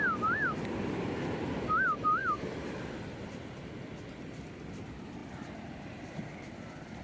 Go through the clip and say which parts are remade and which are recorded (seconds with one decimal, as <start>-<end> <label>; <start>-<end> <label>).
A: 0.0-2.2 remade; 2.2-4.3 recorded; 4.3-7.0 remade